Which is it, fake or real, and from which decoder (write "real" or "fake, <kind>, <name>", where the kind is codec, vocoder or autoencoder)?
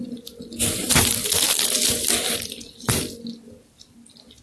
real